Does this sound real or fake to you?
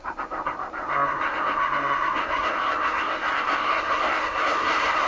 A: fake